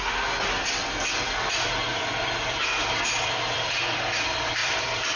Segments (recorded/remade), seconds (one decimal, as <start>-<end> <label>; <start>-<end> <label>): 0.0-1.9 recorded; 1.9-3.8 remade; 3.8-4.6 recorded; 4.6-5.2 remade